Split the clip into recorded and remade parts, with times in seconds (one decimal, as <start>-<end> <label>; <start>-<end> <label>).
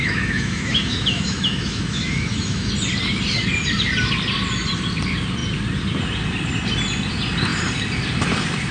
0.0-2.7 remade; 2.7-8.7 recorded